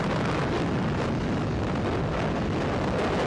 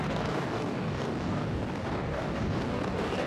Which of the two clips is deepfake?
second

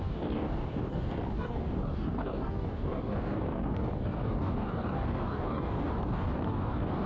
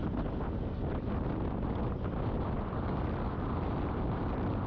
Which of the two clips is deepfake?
first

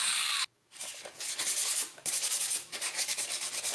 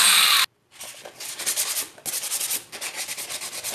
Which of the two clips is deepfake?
first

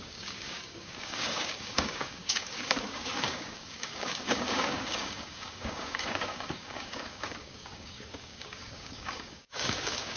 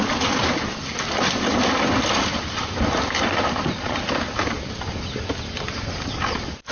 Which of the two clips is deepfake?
first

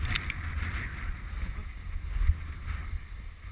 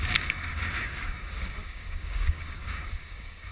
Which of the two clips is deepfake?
second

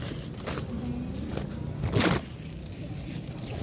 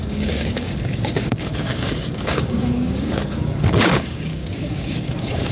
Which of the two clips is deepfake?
second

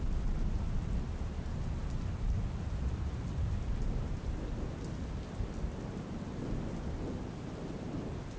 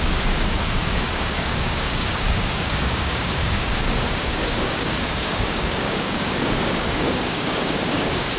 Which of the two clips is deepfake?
second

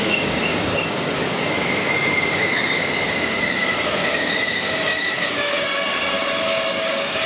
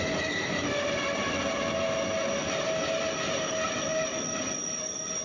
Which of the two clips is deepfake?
first